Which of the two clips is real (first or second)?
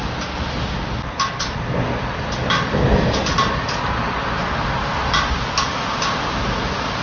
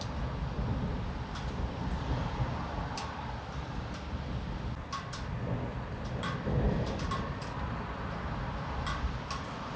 first